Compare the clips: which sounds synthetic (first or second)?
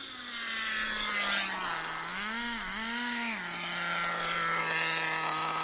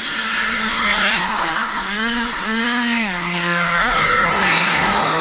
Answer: second